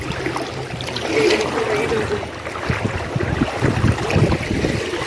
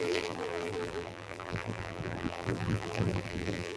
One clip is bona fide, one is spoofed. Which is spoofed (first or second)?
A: second